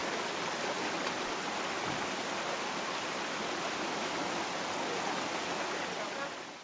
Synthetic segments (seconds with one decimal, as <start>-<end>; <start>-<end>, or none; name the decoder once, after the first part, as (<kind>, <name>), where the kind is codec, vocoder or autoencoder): none